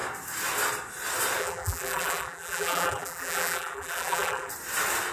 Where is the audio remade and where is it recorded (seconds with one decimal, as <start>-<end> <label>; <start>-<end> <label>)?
0.0-1.4 recorded; 1.4-4.5 remade; 4.5-5.1 recorded